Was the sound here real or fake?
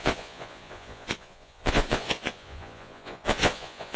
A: fake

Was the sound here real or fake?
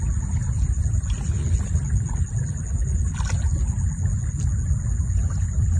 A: real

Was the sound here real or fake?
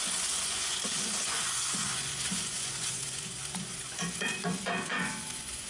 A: fake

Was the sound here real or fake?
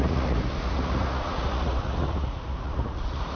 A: fake